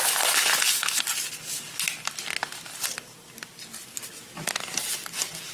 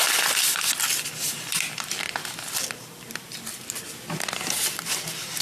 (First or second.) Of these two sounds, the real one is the first